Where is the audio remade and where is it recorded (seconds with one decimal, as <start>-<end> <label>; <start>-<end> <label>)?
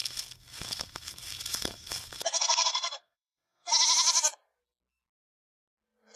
0.0-3.7 remade; 3.7-6.2 recorded